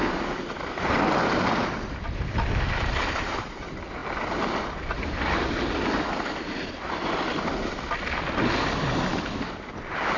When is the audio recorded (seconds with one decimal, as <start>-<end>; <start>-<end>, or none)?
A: 0.0-9.1; 9.7-10.2